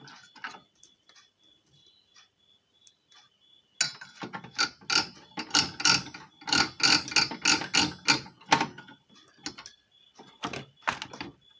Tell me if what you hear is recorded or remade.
recorded